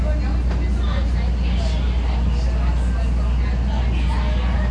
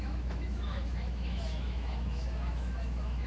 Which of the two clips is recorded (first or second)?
first